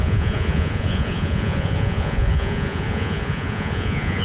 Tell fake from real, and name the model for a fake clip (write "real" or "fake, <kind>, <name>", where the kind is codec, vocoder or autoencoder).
fake, vocoder, Vocos